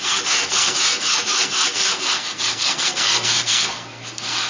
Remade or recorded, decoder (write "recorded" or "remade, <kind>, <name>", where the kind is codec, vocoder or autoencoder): remade, codec, SNAC